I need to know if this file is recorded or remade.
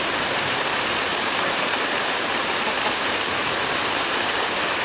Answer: remade